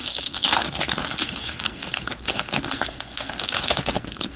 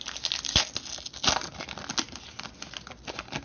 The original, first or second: second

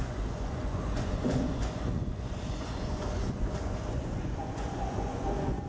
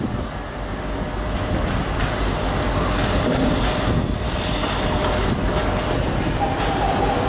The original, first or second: second